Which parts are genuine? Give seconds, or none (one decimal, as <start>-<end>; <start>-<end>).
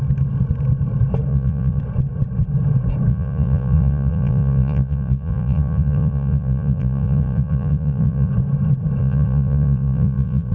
0.0-1.3; 1.8-3.1; 8.3-9.0